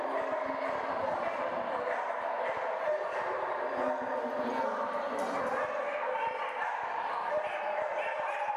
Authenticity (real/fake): real